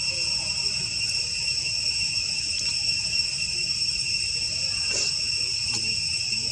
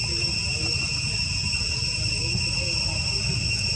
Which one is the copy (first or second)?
first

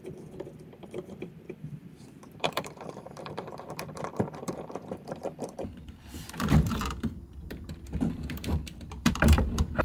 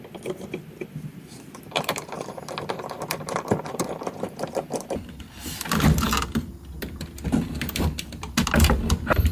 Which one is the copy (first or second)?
first